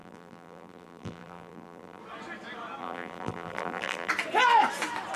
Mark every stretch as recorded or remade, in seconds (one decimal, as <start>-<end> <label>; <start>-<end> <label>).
0.0-2.0 remade; 2.0-2.8 recorded; 2.8-4.1 remade; 4.1-5.2 recorded